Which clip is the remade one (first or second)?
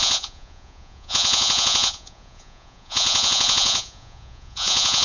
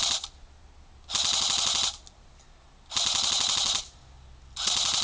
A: first